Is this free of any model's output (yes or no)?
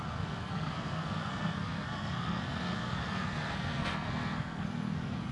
no